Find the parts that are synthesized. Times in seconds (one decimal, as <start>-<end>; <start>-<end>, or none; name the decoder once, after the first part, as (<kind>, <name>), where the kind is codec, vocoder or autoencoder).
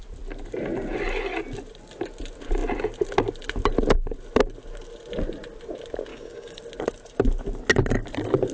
6.1-6.6 (codec, DAC)